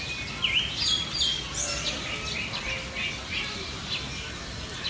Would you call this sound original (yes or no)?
yes